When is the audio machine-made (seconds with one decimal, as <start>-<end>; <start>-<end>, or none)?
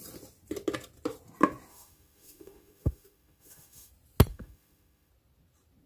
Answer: 1.7-3.9; 4.3-5.1